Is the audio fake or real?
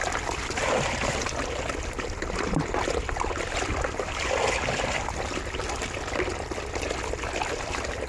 real